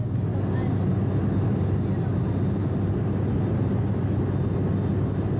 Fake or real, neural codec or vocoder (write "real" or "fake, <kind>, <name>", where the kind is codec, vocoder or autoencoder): real